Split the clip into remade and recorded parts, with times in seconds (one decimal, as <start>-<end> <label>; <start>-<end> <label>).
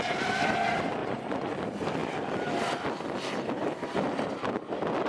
0.0-1.0 recorded; 1.0-1.6 remade; 1.6-5.1 recorded